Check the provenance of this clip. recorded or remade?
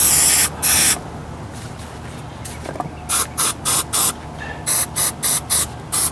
recorded